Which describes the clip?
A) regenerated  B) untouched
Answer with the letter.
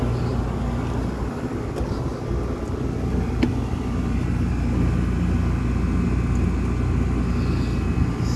B